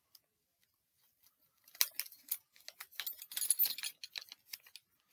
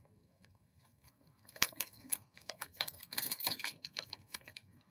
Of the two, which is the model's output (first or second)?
second